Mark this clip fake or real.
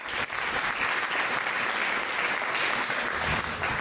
real